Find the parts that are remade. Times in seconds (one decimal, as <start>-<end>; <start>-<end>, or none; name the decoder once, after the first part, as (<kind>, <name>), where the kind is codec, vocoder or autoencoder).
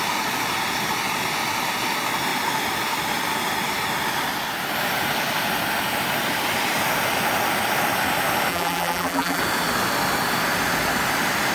8.5-9.4 (vocoder, BigVGAN v2)